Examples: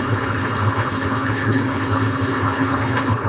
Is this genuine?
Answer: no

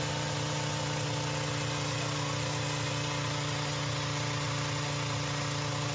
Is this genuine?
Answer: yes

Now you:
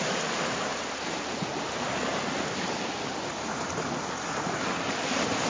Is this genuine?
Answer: yes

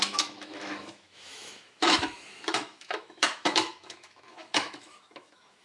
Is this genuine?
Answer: no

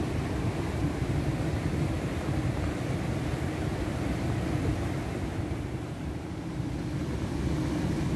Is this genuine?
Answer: yes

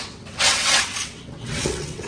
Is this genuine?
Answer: no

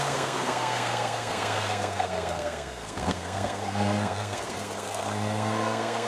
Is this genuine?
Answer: no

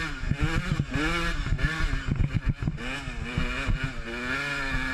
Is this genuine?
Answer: yes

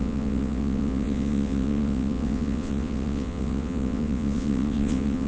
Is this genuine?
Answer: no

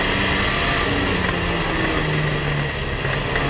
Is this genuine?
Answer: yes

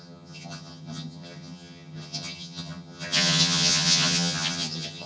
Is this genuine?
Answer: no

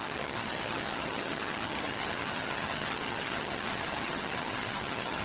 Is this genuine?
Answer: no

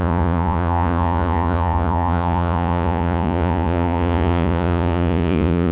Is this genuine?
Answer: no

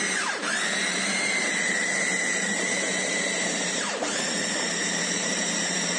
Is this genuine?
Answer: no